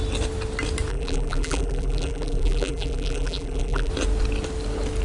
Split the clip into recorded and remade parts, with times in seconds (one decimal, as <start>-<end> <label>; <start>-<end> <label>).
0.0-0.9 recorded; 0.9-3.9 remade; 3.9-5.0 recorded